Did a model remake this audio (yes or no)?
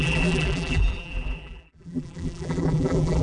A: yes